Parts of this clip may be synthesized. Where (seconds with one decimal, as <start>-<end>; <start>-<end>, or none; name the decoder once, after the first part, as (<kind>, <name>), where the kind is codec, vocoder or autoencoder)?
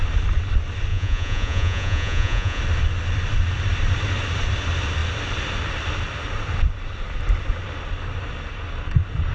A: 0.9-2.6 (vocoder, Vocos)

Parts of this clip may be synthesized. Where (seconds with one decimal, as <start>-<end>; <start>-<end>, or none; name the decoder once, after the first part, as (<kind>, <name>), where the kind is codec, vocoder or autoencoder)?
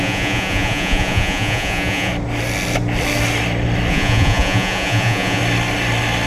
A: 0.0-2.1 (vocoder, Vocos); 3.9-5.4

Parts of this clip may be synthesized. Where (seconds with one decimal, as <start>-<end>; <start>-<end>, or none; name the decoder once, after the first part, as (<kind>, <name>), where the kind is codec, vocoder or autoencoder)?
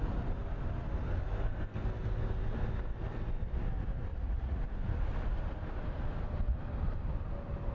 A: 4.1-4.6 (vocoder, Vocos)